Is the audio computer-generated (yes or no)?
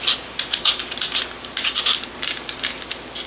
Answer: no